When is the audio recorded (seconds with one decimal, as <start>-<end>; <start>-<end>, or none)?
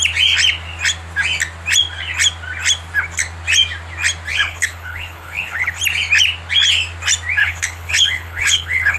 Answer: 0.0-4.3; 5.8-7.4